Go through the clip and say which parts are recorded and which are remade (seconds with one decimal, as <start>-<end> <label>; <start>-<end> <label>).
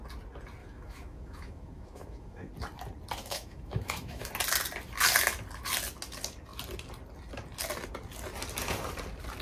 0.0-0.6 recorded; 0.6-2.5 remade; 2.5-3.2 recorded; 3.2-4.3 remade; 4.3-9.4 recorded